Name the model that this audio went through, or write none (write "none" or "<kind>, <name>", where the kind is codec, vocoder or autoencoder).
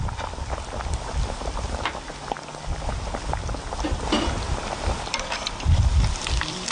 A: none